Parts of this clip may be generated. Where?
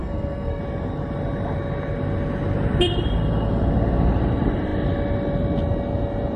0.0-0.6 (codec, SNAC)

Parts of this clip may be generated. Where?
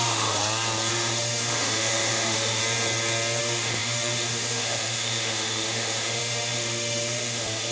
0.0-0.4 (autoencoder, DAC-VAE); 0.9-2.6; 3.4-7.7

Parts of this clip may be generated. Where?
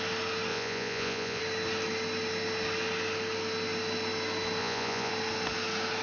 0.5-1.4 (vocoder, Vocos); 4.6-5.1